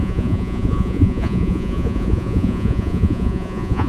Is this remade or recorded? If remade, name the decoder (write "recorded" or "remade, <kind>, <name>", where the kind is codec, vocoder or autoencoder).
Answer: remade, vocoder, Vocos